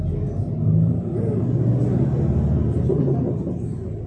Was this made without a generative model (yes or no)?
yes